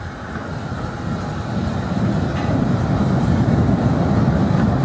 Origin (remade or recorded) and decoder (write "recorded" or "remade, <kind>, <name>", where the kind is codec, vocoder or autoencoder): recorded